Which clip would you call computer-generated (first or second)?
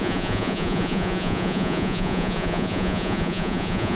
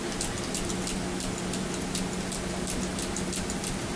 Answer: first